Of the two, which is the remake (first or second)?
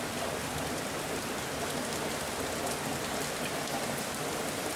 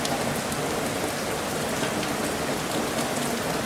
first